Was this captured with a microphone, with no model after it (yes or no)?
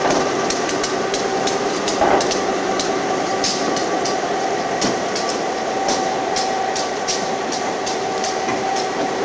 no